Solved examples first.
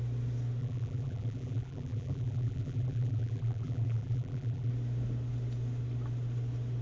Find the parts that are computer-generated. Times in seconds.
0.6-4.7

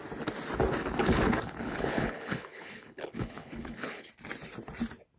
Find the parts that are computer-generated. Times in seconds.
1.0-4.1

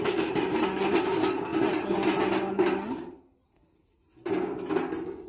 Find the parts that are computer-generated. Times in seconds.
none

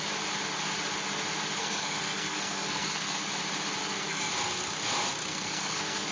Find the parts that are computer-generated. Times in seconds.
1.6-3.3; 3.8-4.3; 5.3-6.1

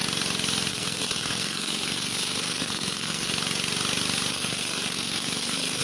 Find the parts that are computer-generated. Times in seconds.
0.7-3.3; 4.3-5.8

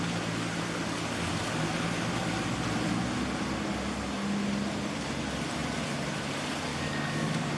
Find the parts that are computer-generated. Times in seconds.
6.7-7.6